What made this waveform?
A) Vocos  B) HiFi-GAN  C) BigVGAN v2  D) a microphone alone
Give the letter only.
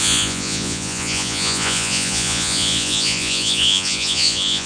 A